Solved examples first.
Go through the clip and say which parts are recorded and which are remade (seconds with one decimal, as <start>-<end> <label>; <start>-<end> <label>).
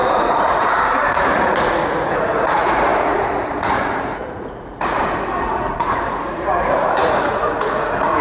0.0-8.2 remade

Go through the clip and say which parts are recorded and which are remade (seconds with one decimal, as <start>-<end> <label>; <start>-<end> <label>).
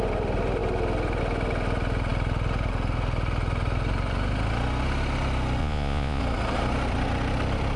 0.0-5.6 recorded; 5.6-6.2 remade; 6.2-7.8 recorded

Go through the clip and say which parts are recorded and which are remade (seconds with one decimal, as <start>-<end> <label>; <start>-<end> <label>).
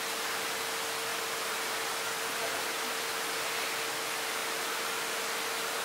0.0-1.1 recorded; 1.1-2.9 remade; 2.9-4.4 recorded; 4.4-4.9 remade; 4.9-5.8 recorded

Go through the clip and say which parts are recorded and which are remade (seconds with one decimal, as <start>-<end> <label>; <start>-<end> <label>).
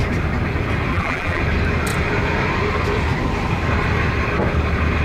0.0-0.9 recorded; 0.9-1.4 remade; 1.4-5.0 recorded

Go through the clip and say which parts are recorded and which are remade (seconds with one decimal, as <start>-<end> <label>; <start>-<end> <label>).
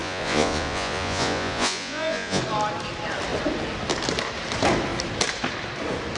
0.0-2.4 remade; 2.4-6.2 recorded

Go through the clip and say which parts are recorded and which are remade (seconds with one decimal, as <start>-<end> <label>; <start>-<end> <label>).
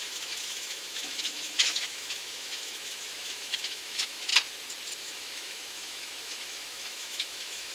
0.0-4.3 remade; 4.3-5.0 recorded; 5.0-7.7 remade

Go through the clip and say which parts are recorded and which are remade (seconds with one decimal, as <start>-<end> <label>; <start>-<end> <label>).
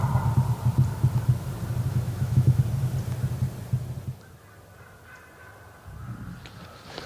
0.0-1.9 recorded; 1.9-2.6 remade; 2.6-7.1 recorded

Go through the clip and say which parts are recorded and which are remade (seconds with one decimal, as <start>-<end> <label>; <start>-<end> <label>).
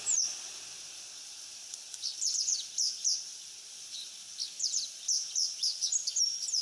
0.0-6.6 recorded